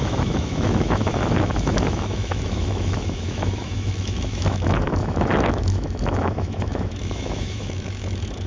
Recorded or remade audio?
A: remade